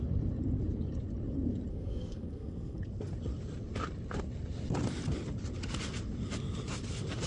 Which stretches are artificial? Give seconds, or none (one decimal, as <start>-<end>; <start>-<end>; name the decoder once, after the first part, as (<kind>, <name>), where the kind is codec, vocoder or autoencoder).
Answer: 1.7-2.8 (codec, SNAC)